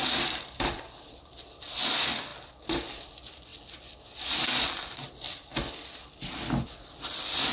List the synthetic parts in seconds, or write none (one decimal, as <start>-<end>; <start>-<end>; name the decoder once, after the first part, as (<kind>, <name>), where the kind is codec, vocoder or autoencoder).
0.0-3.5 (vocoder, BigVGAN v2); 4.6-5.5; 6.9-7.5